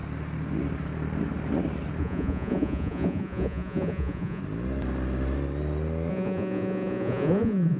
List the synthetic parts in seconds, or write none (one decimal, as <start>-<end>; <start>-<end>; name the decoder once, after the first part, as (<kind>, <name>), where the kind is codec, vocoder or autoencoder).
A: 2.0-4.4 (vocoder, Vocos); 6.1-7.8